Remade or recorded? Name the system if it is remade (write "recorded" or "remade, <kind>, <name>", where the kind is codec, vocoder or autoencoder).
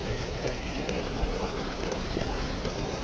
remade, codec, SNAC